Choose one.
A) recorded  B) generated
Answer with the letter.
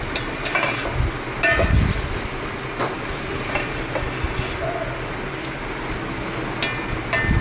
A